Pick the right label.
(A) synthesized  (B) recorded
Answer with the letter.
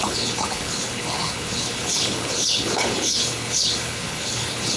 A